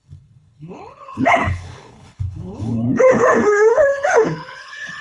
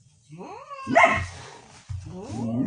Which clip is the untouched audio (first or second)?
second